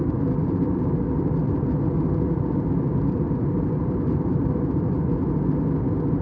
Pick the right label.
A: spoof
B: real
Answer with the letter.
B